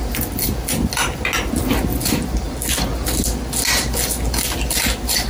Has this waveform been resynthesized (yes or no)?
no